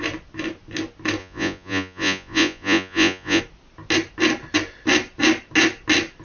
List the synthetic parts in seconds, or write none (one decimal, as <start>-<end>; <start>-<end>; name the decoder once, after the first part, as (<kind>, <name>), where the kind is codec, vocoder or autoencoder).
1.2-3.4 (vocoder, Vocos)